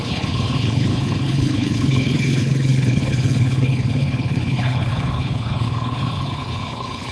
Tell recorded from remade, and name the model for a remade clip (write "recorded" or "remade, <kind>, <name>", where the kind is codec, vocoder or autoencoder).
remade, codec, HILCodec